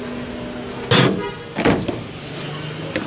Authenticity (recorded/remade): recorded